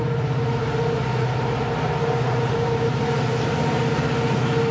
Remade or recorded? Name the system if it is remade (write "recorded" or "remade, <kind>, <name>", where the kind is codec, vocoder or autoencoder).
recorded